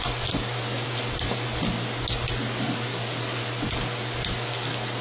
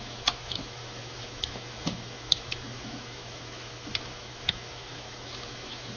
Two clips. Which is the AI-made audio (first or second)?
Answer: second